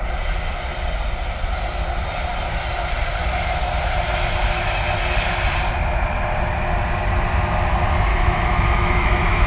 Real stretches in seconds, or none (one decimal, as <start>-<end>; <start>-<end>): 0.0-8.1